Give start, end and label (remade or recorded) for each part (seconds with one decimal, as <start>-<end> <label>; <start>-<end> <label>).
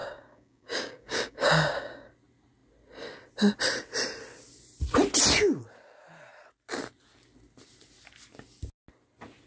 0.0-2.1 remade; 2.1-9.5 recorded